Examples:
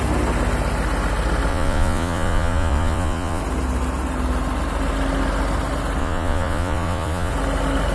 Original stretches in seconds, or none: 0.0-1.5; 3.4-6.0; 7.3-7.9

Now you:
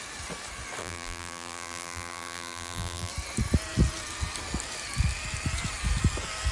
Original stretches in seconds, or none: 0.0-0.8; 3.1-6.5

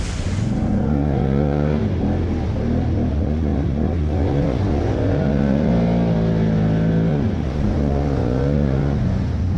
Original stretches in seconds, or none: 1.8-3.1; 5.7-7.1

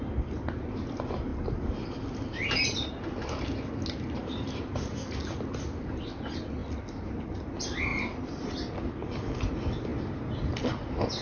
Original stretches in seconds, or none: 0.0-11.2

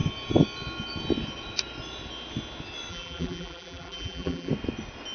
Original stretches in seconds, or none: 0.0-2.9; 4.5-5.1

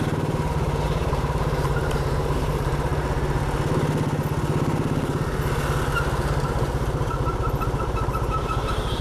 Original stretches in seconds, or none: 2.9-6.2